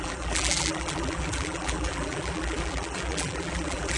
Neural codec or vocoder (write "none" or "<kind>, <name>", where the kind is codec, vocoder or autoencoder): vocoder, BigVGAN v2